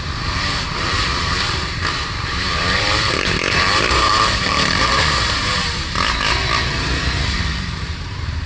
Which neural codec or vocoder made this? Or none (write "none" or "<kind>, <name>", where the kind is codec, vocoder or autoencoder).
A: vocoder, BigVGAN v2